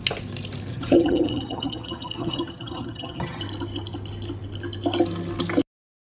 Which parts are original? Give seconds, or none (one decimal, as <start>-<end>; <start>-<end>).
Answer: 0.0-0.7; 3.4-6.0